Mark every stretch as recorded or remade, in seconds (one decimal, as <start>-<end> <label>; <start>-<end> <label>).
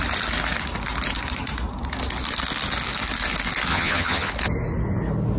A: 0.0-3.7 recorded; 3.7-4.3 remade; 4.3-5.4 recorded